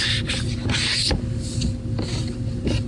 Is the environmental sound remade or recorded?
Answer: recorded